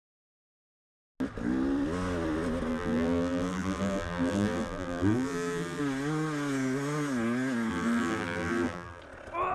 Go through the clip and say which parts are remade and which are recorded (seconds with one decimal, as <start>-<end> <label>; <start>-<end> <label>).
0.0-2.7 recorded; 2.7-5.8 remade; 5.8-7.7 recorded; 7.7-9.0 remade; 9.0-9.5 recorded